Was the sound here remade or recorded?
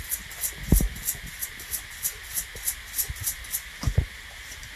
recorded